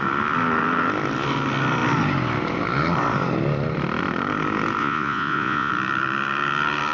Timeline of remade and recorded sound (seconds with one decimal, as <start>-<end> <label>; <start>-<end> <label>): 0.0-4.8 recorded; 4.8-5.7 remade; 5.7-6.9 recorded